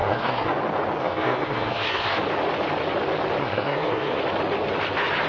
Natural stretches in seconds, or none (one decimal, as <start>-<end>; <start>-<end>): 0.5-1.0; 2.2-3.4; 4.2-5.3

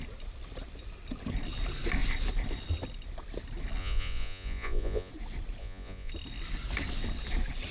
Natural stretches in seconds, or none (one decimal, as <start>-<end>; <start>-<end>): 0.0-3.8; 5.1-5.6; 6.1-7.7

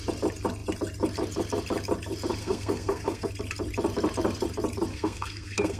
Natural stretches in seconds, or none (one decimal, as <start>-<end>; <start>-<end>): 0.0-2.4; 3.3-4.9

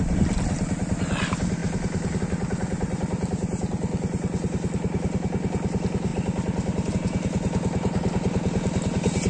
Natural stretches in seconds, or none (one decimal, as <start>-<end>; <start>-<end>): 0.0-9.3

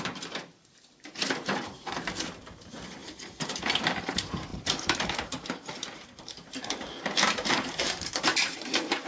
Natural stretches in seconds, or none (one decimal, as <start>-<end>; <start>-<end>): none